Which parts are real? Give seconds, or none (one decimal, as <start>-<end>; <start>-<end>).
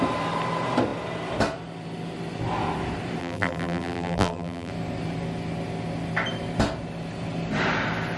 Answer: 0.0-3.2; 4.7-8.2